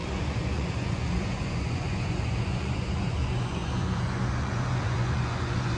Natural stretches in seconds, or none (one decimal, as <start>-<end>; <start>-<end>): none